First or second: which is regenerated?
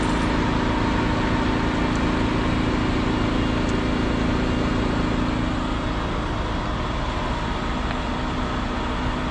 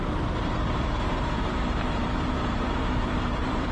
second